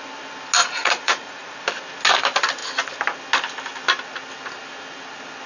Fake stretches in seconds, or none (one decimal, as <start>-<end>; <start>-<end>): 0.6-1.6